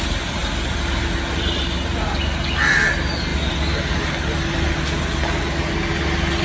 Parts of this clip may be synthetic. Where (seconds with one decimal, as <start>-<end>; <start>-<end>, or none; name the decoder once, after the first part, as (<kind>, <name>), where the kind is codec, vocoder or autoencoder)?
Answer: none